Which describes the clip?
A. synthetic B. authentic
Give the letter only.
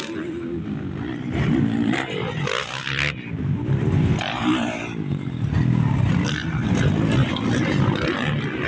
B